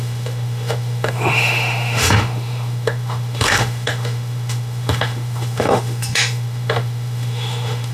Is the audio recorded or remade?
remade